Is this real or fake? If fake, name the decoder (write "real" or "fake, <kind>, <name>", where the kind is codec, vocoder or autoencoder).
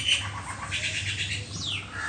real